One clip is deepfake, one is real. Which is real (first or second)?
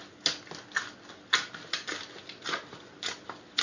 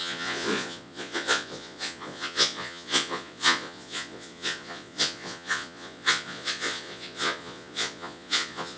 first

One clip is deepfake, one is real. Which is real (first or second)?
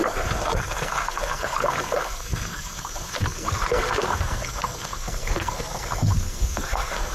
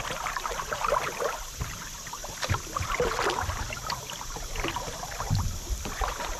second